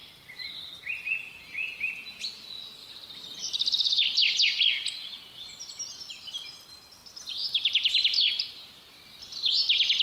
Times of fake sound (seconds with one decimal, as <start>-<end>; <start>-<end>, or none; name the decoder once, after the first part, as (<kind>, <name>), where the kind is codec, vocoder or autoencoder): 0.0-1.4 (vocoder, BigVGAN v2); 2.8-4.0; 7.0-8.5